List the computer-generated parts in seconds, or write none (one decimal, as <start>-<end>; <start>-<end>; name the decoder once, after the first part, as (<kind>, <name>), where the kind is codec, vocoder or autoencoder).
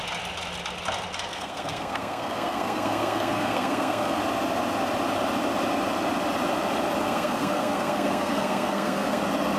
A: 1.3-4.2 (codec, SNAC); 7.0-9.2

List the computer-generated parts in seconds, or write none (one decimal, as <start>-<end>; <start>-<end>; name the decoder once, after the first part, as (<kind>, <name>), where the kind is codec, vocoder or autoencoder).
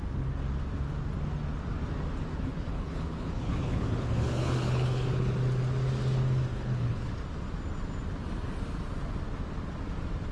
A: 2.3-5.3 (codec, HILCodec); 6.5-7.1